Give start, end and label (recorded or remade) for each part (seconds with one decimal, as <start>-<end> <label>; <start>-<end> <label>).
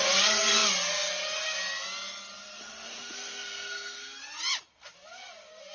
0.0-2.4 recorded; 2.4-4.2 remade; 4.2-5.7 recorded